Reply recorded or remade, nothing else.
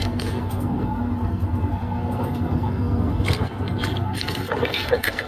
remade